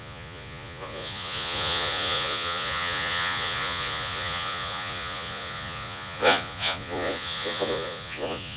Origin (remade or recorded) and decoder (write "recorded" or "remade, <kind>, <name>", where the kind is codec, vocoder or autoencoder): remade, vocoder, Vocos